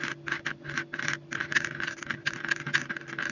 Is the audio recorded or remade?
recorded